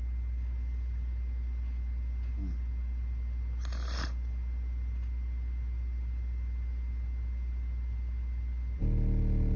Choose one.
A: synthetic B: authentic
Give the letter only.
B